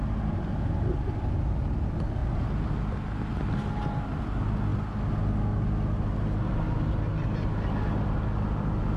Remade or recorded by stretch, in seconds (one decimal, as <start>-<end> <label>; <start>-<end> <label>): 0.0-9.0 recorded